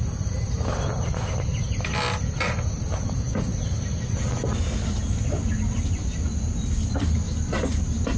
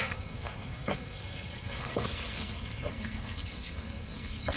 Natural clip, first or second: first